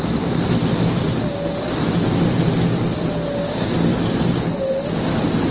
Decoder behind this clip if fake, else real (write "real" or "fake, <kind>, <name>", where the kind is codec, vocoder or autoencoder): real